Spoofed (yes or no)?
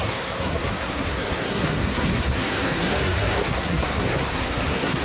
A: yes